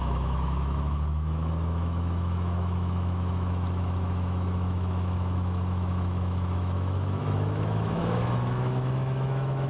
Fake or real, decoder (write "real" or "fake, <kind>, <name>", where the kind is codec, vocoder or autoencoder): fake, autoencoder, DAC-VAE